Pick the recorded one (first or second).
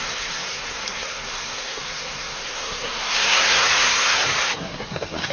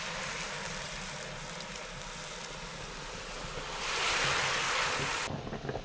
second